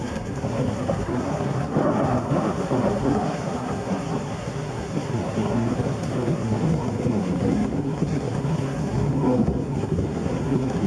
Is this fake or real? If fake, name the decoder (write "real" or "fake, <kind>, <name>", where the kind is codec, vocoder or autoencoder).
fake, codec, SNAC